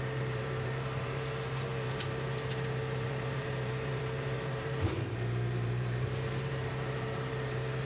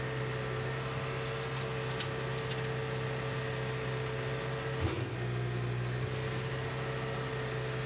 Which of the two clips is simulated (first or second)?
first